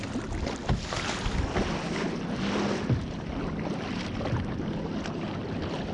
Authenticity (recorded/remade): recorded